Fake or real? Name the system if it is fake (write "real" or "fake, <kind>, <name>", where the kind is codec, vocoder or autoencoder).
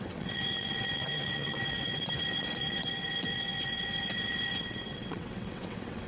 fake, vocoder, WaveNeXt